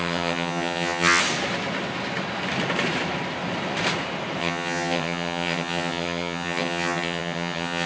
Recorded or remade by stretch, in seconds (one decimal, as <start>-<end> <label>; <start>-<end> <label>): 0.0-1.2 remade; 1.2-4.4 recorded; 4.4-7.9 remade